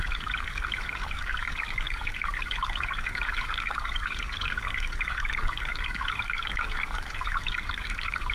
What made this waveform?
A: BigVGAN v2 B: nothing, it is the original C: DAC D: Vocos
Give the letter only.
C